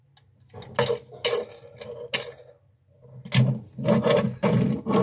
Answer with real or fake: real